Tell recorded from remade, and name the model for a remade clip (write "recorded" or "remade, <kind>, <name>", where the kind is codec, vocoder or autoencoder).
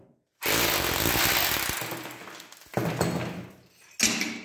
recorded